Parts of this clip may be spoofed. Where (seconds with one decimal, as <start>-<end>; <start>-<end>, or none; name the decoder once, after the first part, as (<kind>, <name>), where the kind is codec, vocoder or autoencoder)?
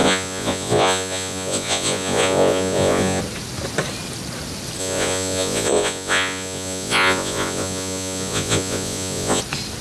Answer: 0.0-3.2 (vocoder, Vocos); 4.8-9.4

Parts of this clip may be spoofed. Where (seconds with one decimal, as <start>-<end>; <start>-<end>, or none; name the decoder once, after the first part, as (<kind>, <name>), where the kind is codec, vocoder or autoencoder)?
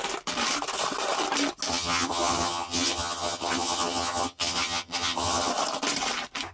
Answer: 1.7-5.5 (vocoder, HiFi-GAN)